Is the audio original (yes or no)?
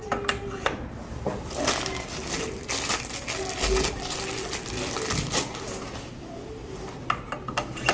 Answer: yes